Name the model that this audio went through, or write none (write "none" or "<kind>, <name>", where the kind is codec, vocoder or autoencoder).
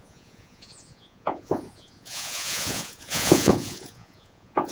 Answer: vocoder, Vocos